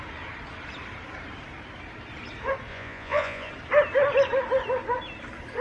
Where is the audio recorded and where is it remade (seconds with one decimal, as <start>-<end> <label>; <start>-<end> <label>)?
0.0-2.7 recorded; 2.7-3.5 remade; 3.5-5.6 recorded